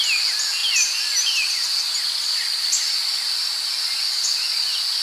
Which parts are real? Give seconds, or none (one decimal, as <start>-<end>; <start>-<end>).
0.0-3.7; 4.3-5.0